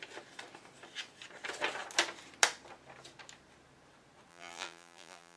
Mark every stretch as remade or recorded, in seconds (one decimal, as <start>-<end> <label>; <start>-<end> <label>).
0.0-4.3 recorded; 4.3-5.4 remade